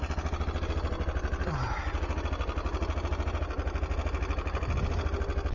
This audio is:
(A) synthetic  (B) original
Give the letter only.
B